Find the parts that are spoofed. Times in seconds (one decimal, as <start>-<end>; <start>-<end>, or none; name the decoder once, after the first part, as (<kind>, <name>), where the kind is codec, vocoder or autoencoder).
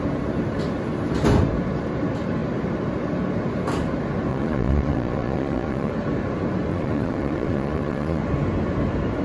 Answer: 4.3-5.9 (vocoder, Vocos); 6.7-8.2